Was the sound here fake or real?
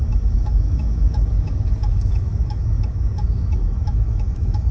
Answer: fake